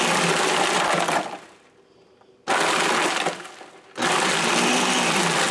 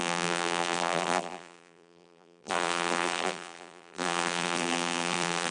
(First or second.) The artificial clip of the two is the second